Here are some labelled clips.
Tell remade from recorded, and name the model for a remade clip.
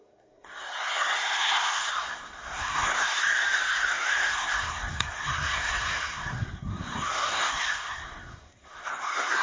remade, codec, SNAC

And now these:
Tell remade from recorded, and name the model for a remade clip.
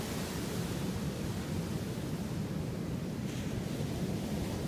recorded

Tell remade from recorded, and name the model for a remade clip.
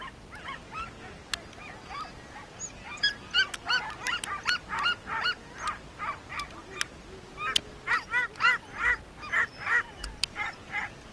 recorded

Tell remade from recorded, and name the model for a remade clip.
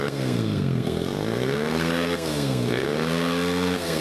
remade, codec, SNAC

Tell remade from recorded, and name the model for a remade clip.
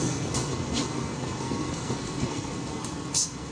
remade, codec, SNAC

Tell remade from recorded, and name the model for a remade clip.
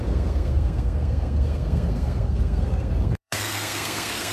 remade, codec, SNAC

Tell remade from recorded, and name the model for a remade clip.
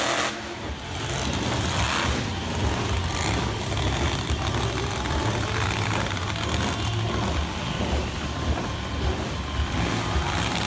recorded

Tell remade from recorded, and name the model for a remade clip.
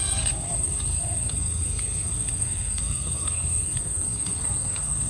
remade, codec, SNAC